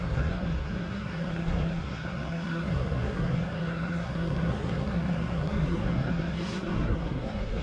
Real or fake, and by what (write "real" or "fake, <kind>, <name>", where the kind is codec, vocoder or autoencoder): fake, codec, SNAC